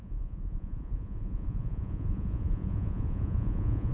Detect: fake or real fake